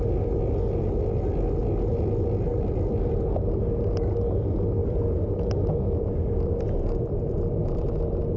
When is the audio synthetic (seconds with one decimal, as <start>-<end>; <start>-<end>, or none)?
2.5-3.6; 4.8-7.3